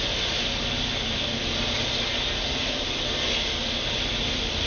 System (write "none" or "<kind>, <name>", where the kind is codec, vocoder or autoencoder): none